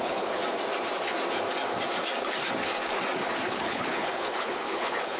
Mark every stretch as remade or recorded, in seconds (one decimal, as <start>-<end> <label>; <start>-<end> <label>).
0.0-0.4 remade; 0.4-3.5 recorded; 3.5-5.2 remade